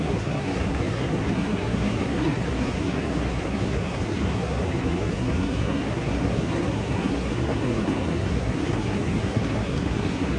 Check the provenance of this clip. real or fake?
fake